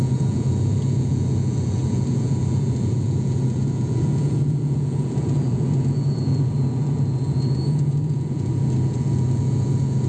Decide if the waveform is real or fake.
fake